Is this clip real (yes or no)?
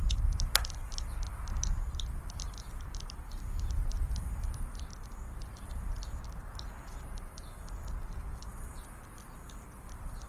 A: no